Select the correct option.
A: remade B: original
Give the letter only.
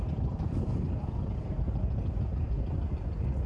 B